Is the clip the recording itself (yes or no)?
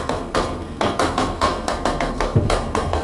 no